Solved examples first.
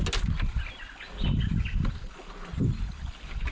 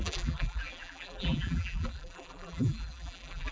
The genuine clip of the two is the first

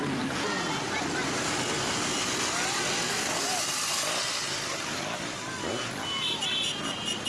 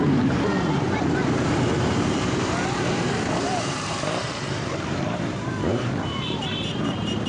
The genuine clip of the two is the first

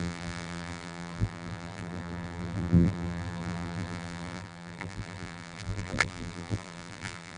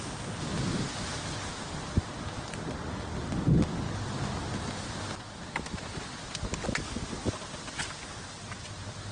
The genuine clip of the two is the second